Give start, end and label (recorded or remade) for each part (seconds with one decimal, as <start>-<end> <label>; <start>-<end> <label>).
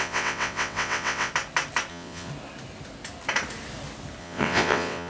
0.0-1.3 remade; 1.3-1.9 recorded; 1.9-2.3 remade; 2.3-4.2 recorded; 4.2-5.1 remade